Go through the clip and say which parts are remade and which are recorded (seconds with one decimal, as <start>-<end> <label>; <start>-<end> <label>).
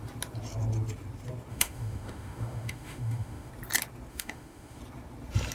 0.0-1.5 recorded; 1.5-3.5 remade; 3.5-4.1 recorded; 4.1-4.8 remade; 4.8-5.5 recorded